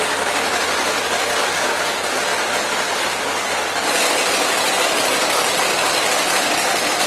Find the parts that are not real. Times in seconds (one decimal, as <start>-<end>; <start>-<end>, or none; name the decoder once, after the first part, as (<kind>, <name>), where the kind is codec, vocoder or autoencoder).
5.2-5.8 (vocoder, BigVGAN v2)

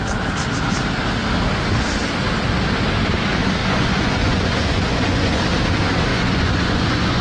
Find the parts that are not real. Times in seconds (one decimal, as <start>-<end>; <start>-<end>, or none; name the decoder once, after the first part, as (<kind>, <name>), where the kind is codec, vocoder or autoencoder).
3.6-5.4 (vocoder, Vocos); 6.1-7.2

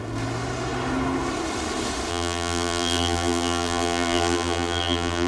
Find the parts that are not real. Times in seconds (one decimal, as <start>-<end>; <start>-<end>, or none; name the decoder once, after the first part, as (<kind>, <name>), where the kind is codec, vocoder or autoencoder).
2.1-5.3 (vocoder, BigVGAN v2)

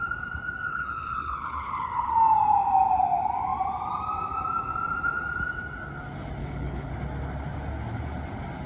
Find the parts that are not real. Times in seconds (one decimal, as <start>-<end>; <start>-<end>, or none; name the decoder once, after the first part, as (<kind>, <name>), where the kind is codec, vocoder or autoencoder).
0.7-2.1 (codec, HILCodec); 6.4-6.9

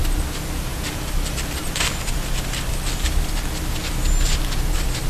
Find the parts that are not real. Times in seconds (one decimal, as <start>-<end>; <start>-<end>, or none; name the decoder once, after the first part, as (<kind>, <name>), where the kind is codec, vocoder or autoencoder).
none